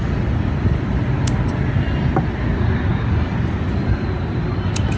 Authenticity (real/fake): real